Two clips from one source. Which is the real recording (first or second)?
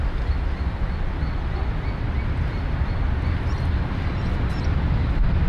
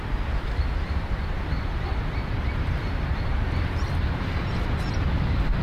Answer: first